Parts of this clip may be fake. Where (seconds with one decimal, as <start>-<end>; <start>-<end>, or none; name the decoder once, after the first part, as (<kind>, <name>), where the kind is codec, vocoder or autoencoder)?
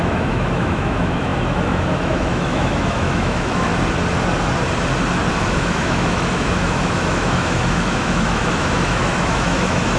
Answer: 0.0-3.7 (autoencoder, DAC-VAE); 5.3-10.0